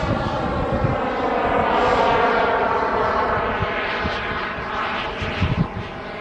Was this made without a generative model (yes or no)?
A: yes